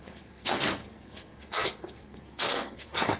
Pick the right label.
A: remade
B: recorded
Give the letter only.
A